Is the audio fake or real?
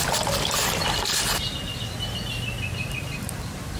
real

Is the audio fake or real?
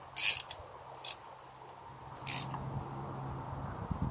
real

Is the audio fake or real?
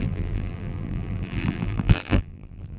fake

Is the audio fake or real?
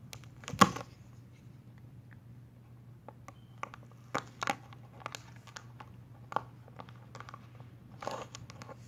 real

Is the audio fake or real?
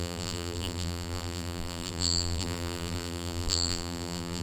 fake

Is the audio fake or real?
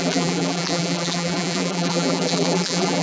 fake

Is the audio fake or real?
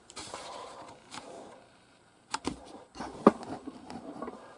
fake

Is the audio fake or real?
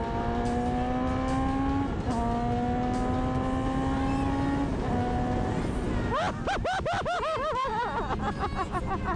real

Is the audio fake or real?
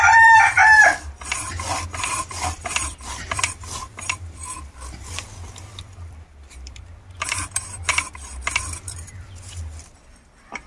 fake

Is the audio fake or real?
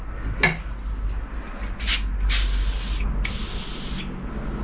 real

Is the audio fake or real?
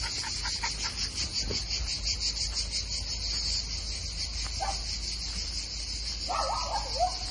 real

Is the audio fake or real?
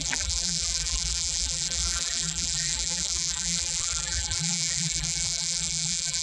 fake